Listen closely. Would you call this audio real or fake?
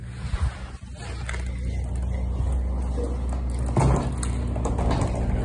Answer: real